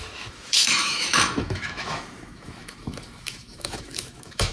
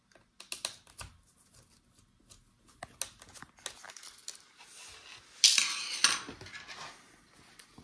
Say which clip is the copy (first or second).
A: first